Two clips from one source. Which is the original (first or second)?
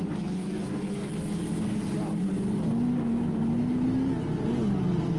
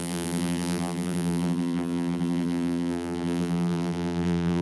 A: first